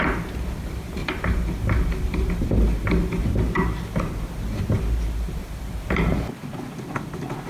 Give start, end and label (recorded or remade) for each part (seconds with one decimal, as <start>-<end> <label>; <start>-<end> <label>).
0.0-1.0 recorded; 1.0-2.3 remade; 2.3-3.2 recorded; 3.2-3.8 remade; 3.8-5.4 recorded; 5.4-6.3 remade; 6.3-7.5 recorded